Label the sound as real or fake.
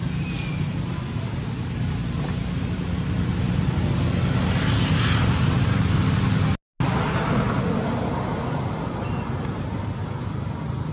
real